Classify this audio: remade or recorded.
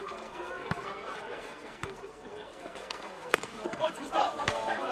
remade